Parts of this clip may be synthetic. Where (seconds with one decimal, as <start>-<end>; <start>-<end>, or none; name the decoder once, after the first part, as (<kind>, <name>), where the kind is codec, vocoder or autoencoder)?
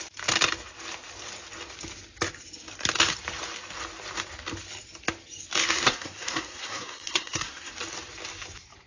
5.6-7.7 (codec, SNAC)